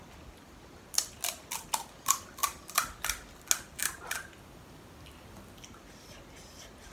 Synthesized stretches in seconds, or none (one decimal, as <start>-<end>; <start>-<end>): none